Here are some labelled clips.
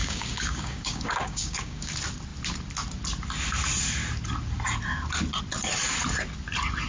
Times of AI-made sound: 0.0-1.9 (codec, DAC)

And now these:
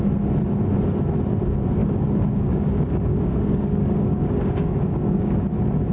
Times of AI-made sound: 1.8-5.3 (codec, DAC)

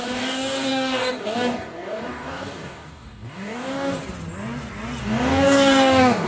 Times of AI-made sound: 0.0-4.0 (codec, DAC); 5.0-6.3

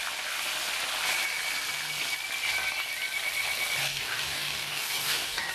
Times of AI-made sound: 3.8-5.5 (codec, DAC)

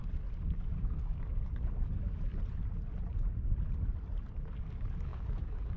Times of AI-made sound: 0.0-2.3 (codec, DAC); 4.6-5.8